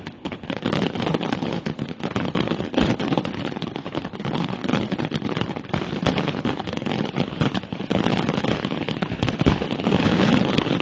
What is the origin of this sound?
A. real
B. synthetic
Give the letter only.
B